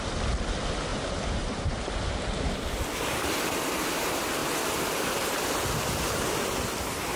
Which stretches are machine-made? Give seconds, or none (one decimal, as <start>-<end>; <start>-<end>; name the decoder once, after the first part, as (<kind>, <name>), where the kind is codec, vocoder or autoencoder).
0.9-1.9 (vocoder, BigVGAN v2)